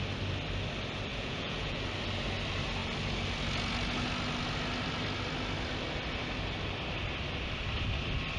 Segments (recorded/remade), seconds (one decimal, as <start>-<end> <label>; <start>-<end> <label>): 0.0-1.1 recorded; 1.1-1.8 remade; 1.8-8.4 recorded